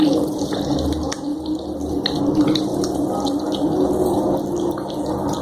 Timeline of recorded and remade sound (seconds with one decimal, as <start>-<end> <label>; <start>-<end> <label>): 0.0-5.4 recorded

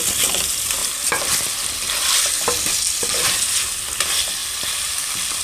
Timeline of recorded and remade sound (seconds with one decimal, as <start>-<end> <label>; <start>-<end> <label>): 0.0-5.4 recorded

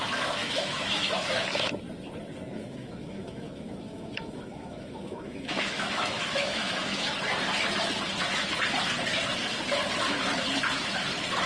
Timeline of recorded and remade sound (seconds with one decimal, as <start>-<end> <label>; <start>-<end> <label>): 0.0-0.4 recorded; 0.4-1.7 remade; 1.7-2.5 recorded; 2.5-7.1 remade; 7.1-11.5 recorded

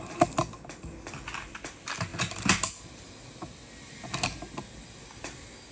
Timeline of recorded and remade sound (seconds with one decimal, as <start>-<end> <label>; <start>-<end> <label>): 0.0-5.7 recorded

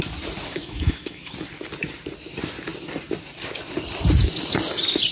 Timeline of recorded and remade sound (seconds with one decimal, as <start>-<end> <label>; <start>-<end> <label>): 0.0-0.5 recorded; 0.5-1.3 remade; 1.3-5.1 recorded

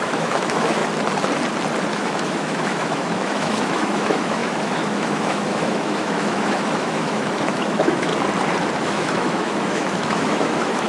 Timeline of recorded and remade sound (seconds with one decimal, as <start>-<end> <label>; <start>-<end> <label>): 0.0-0.8 remade; 0.8-1.9 recorded; 1.9-8.1 remade; 8.1-8.8 recorded; 8.8-10.9 remade

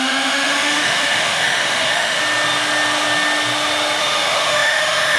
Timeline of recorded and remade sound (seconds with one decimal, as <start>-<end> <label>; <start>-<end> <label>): 0.0-2.2 remade; 2.2-4.0 recorded; 4.0-5.2 remade